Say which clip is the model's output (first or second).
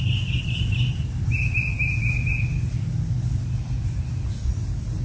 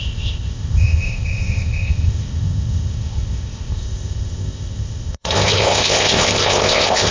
second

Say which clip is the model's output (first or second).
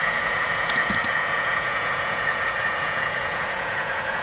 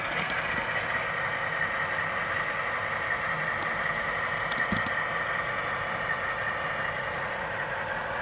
first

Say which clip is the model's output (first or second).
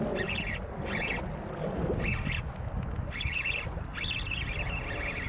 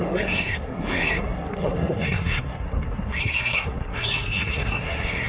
second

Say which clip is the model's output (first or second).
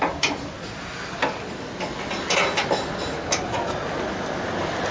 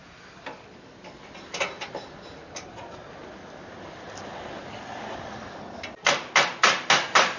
second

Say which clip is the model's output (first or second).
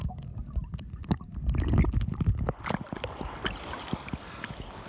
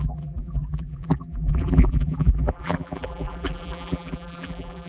second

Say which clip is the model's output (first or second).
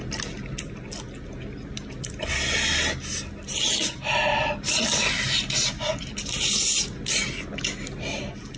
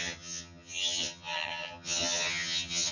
second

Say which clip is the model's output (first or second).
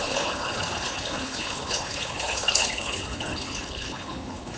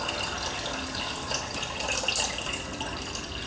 first